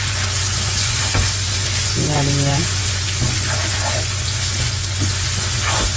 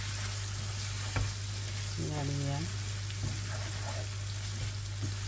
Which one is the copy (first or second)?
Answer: first